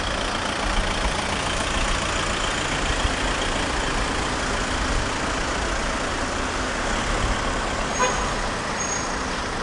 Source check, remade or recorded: recorded